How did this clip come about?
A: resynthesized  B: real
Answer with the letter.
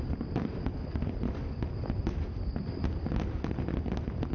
B